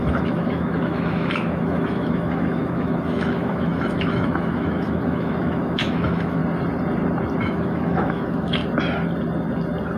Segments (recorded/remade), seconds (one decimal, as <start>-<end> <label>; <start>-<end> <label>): 0.0-6.4 remade; 6.4-7.4 recorded; 7.4-8.6 remade; 8.6-10.0 recorded